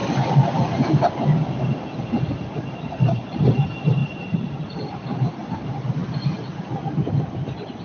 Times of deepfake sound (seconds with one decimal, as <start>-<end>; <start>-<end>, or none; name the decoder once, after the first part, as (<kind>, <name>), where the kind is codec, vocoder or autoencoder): 4.0-5.0 (vocoder, Vocos)